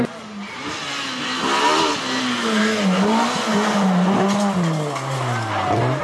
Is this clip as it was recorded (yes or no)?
yes